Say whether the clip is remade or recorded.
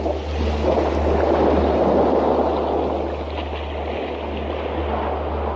recorded